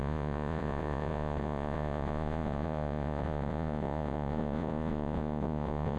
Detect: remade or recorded remade